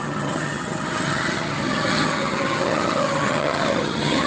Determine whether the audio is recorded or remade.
remade